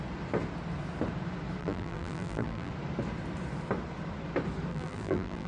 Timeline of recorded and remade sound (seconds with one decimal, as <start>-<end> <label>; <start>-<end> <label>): 0.0-1.6 recorded; 1.6-2.7 remade; 2.7-4.7 recorded; 4.7-5.5 remade